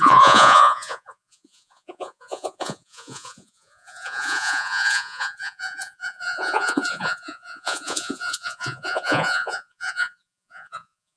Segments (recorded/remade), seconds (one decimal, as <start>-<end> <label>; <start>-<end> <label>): 0.0-11.2 remade